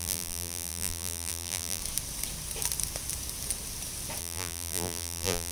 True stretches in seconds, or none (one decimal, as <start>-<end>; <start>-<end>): 1.8-4.2